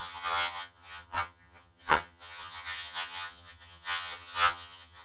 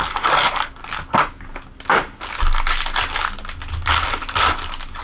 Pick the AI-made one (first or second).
first